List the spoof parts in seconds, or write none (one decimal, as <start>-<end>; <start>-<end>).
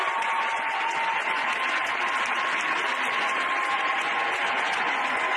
0.0-1.9; 3.1-5.4